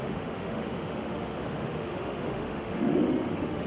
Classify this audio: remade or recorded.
remade